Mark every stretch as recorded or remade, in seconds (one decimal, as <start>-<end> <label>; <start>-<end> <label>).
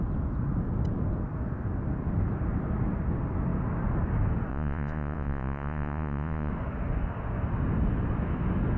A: 0.0-4.5 recorded; 4.5-6.5 remade; 6.5-8.8 recorded